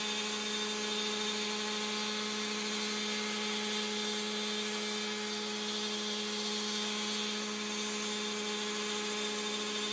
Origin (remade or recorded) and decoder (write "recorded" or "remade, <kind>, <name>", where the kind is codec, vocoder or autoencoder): recorded